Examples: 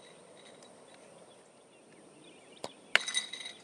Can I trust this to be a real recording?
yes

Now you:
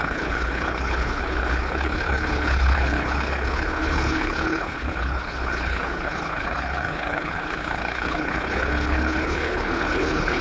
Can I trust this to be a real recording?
no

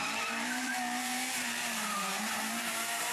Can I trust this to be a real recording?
no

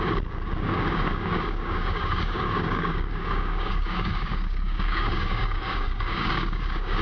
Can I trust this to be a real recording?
no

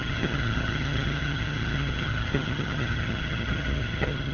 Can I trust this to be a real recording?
no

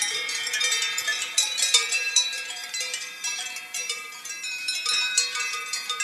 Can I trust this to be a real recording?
no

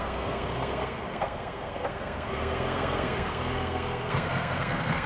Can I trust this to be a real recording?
no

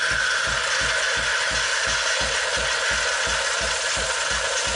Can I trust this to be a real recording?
yes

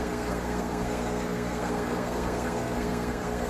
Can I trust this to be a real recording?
no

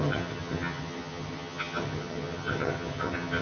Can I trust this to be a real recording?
no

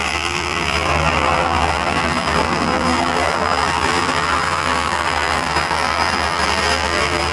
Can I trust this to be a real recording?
no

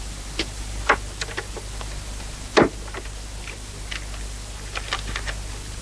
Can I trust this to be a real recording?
yes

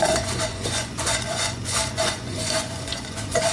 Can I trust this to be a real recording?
no